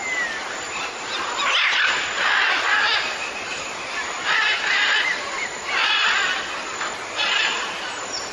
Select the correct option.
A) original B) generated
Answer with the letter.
A